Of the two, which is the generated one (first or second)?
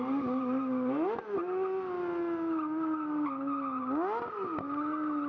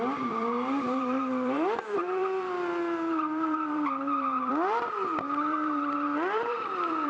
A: second